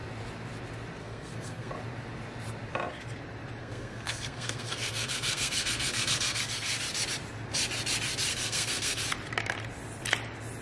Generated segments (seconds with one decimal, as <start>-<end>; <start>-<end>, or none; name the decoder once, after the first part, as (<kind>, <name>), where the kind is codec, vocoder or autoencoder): 1.0-1.7 (codec, SNAC); 3.6-6.4; 8.3-9.0